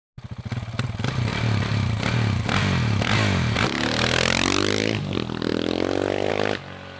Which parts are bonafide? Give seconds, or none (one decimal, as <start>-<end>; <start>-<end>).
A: 0.0-7.0